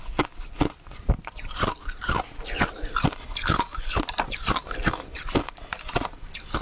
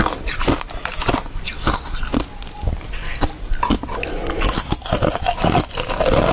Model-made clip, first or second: first